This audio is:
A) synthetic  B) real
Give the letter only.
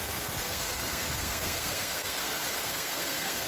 A